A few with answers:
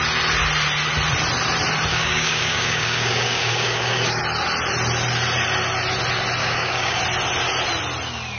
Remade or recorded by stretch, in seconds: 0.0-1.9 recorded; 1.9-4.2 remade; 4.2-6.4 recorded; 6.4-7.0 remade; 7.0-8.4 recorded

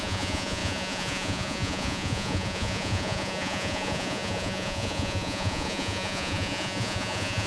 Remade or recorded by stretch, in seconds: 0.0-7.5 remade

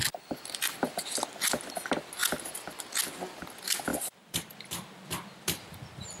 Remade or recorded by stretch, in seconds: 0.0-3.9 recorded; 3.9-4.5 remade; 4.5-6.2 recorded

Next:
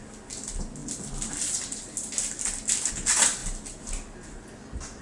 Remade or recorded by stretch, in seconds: 0.0-5.0 recorded

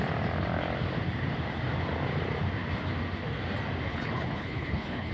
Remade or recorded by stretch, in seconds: 0.0-3.9 recorded; 3.9-5.1 remade

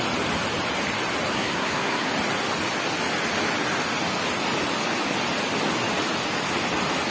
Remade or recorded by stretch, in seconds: 0.0-1.3 recorded; 1.3-2.1 remade; 2.1-7.1 recorded